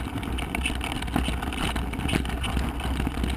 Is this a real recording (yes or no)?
yes